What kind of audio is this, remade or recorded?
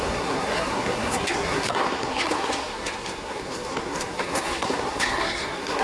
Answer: remade